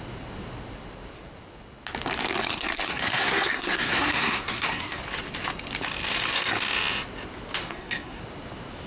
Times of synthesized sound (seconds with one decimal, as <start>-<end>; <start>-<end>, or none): 2.4-5.0; 7.6-8.2